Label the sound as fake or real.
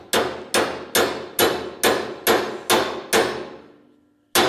real